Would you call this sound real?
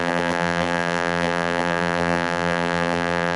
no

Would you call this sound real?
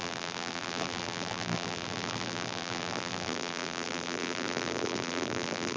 no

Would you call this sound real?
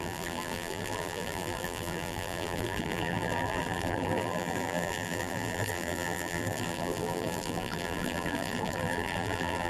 no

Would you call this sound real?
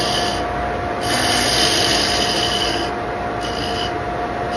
yes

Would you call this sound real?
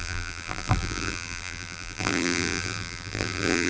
no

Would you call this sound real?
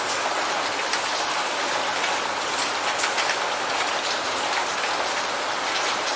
yes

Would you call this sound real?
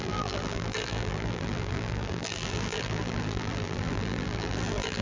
no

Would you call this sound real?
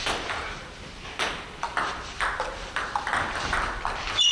no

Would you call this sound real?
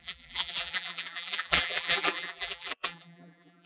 no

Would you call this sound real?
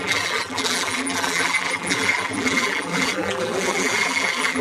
no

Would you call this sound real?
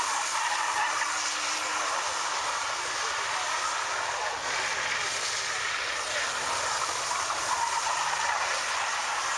yes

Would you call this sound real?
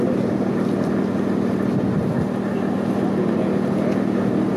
yes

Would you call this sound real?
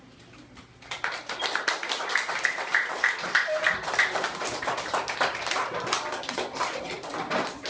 yes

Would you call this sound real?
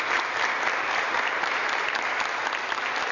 yes